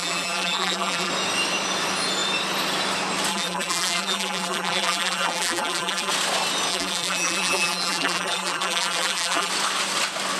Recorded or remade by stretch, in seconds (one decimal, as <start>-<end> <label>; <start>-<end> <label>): 0.0-1.1 remade; 1.1-3.3 recorded; 3.3-6.1 remade; 6.1-6.7 recorded; 6.7-9.5 remade; 9.5-10.4 recorded